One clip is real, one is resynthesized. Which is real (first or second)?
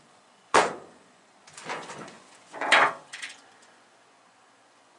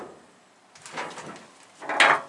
second